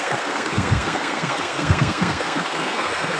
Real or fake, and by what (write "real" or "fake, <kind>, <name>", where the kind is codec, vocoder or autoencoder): fake, codec, SNAC